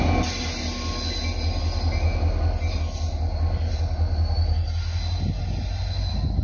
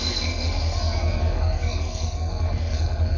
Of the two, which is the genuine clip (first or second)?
first